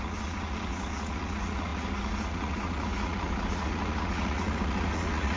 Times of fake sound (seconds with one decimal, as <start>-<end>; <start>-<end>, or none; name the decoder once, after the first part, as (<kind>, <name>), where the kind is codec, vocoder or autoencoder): 0.0-5.4 (vocoder, Vocos)